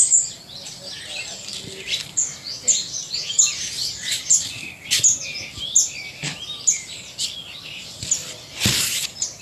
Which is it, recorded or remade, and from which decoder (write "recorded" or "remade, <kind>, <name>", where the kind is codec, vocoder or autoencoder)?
recorded